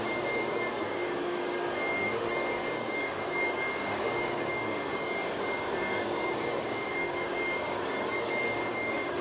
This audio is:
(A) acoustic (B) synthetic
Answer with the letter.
B